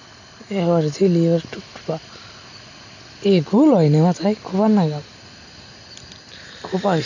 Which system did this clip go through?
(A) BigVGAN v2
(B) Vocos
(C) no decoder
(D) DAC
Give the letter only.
C